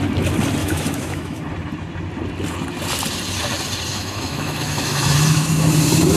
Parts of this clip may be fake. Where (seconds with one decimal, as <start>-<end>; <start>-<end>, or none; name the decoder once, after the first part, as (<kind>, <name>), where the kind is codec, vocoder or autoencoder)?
0.6-1.4 (autoencoder, DAC-VAE); 3.9-5.5